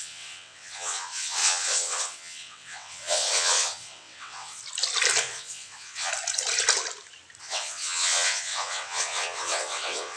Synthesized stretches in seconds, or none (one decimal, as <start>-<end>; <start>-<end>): 0.0-4.6; 5.2-6.1; 7.4-10.2